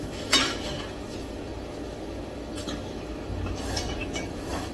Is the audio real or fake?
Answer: fake